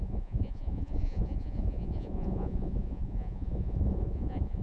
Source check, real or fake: fake